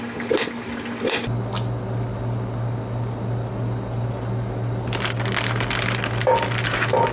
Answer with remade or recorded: recorded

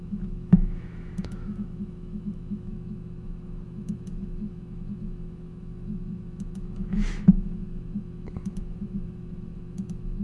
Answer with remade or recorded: remade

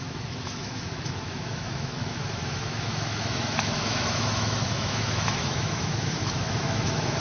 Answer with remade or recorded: remade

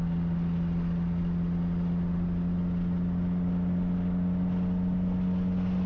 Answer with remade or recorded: recorded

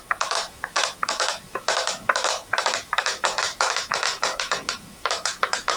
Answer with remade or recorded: remade